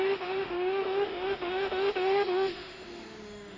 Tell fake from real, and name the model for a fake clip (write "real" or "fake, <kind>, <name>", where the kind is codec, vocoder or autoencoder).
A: fake, autoencoder, DAC-VAE